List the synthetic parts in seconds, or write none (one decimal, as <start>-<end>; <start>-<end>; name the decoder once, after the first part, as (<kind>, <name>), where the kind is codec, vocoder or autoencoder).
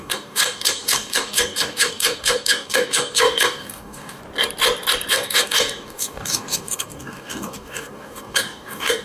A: 0.0-4.2 (codec, DAC); 5.1-9.0